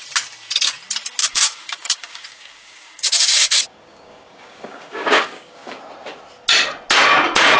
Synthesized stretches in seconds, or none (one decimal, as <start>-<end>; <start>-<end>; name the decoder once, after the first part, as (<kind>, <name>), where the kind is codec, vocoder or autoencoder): 1.2-5.8 (codec, DAC)